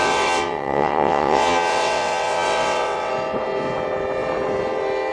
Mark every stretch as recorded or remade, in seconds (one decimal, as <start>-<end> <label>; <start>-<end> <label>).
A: 0.0-3.1 remade; 3.1-5.1 recorded